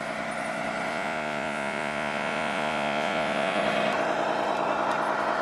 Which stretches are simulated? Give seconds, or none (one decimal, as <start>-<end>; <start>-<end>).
0.9-3.6

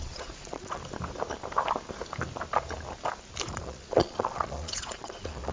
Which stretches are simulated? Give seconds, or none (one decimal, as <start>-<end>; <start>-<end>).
0.0-0.8; 3.5-5.5

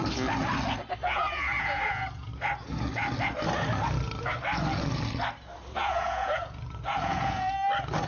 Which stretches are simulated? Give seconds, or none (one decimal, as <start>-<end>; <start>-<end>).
1.0-2.3; 5.8-7.5

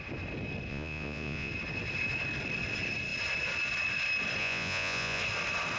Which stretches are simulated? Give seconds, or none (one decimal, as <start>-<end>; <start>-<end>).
0.7-1.5; 4.4-5.2

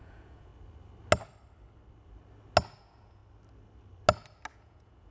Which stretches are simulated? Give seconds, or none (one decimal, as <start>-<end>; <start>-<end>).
0.0-0.5; 2.8-3.2; 4.5-5.1

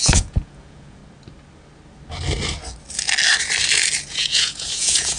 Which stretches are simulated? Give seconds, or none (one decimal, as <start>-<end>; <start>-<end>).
0.0-1.0; 4.1-5.2

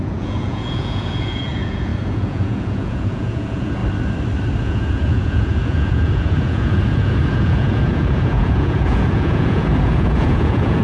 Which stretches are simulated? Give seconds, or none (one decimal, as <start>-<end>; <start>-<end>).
0.0-3.8; 4.6-10.8